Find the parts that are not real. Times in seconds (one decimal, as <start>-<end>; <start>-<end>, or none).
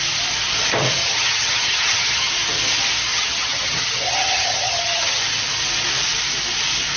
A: 1.0-2.3; 3.1-5.2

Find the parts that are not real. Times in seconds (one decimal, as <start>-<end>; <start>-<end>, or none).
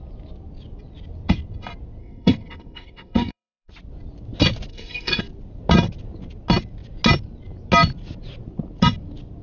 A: 2.0-3.7; 4.7-5.2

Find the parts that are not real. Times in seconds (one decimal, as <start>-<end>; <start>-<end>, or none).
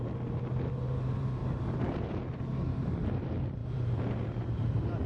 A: 0.0-1.4; 2.4-5.1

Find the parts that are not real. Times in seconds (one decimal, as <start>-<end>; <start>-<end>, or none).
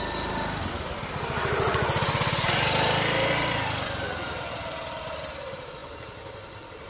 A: none